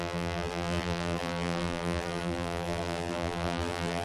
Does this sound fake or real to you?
fake